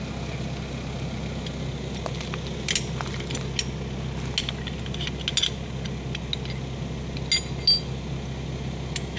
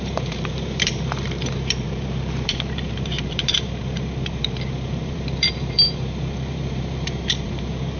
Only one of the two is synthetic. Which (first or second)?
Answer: second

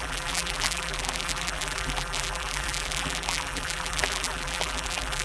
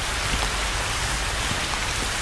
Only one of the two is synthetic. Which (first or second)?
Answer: first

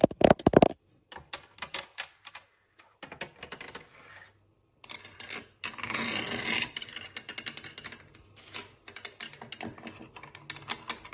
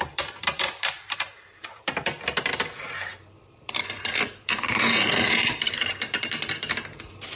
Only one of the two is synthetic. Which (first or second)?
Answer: second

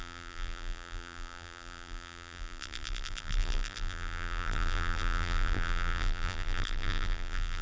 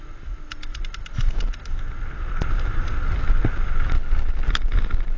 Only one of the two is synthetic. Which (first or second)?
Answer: first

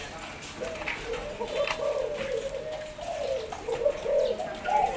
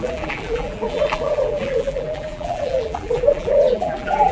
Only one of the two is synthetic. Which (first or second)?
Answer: second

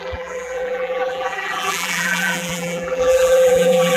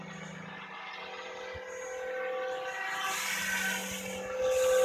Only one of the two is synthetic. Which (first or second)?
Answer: first